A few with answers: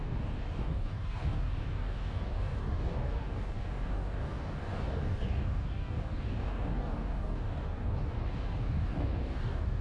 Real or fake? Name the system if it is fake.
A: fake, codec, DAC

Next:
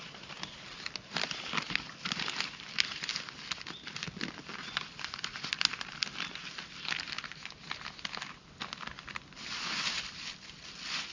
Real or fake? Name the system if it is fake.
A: real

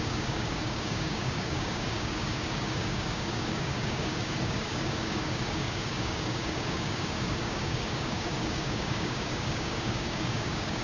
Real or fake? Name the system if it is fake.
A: fake, codec, DAC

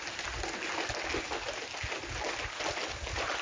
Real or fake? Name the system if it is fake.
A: real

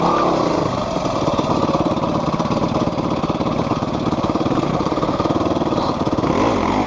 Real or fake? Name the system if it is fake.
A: real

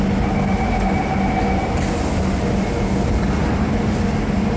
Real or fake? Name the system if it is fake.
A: real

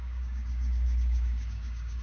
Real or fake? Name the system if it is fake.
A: fake, codec, DAC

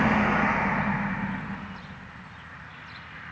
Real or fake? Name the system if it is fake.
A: real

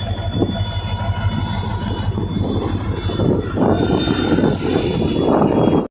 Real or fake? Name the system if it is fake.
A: real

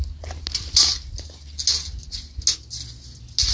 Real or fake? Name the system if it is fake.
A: real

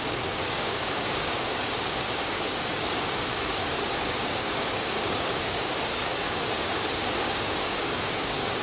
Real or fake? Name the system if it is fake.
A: fake, codec, DAC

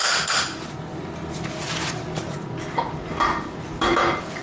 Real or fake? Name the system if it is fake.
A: real